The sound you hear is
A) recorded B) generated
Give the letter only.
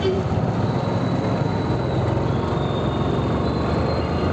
A